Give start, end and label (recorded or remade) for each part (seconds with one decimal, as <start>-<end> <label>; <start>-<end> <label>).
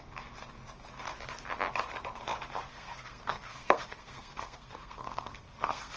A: 0.0-2.7 recorded; 2.7-6.0 remade